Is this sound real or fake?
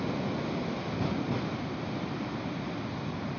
real